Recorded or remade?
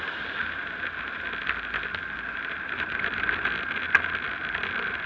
recorded